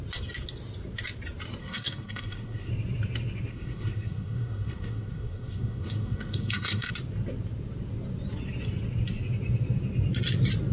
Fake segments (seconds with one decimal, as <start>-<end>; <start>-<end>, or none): 1.6-2.7; 3.5-6.9